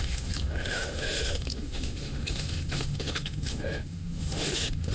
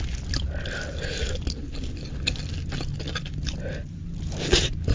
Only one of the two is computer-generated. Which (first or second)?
first